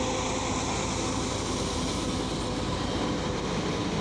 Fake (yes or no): no